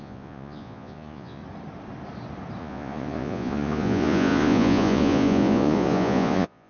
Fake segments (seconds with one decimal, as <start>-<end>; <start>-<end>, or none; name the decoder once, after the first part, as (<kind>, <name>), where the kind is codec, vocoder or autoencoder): 0.0-1.4 (vocoder, Vocos); 2.6-6.7